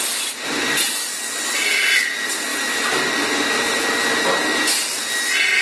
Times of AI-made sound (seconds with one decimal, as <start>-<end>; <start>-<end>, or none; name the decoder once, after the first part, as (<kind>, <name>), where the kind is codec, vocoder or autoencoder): none

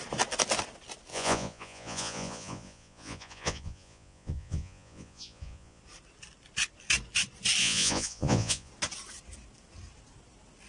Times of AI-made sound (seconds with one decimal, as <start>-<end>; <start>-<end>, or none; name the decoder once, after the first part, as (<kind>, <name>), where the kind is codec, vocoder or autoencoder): 1.1-5.8 (vocoder, Vocos); 7.6-8.7

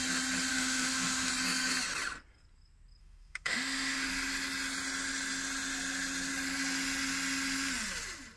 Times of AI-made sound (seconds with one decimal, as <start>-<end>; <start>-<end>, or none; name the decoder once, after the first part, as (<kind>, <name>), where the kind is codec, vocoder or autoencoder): 0.5-1.3 (autoencoder, DAC-VAE); 3.0-4.1

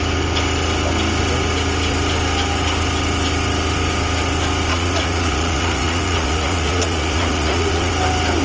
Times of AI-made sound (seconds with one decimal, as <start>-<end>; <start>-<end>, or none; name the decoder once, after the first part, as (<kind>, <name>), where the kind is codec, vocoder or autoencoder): 4.7-7.9 (vocoder, Vocos)

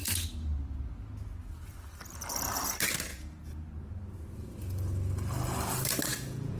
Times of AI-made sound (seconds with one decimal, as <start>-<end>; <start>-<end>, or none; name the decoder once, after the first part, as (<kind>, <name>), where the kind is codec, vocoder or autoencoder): 3.1-3.7 (vocoder, Vocos); 6.1-6.6

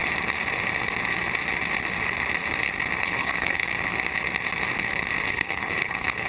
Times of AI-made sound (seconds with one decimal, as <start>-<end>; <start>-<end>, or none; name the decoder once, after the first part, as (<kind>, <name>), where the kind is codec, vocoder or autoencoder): 3.0-3.7 (codec, HILCodec); 5.3-6.3

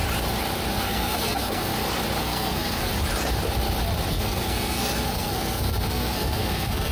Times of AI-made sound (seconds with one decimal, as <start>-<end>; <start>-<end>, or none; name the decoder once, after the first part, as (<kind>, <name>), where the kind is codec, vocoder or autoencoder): 0.7-1.7 (codec, SNAC); 2.2-2.9; 4.1-6.9

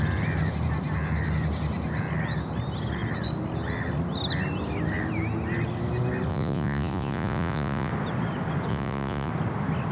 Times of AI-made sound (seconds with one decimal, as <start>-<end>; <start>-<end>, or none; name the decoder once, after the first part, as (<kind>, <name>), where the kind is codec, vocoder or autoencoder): 6.3-7.9 (vocoder, Vocos); 8.7-9.3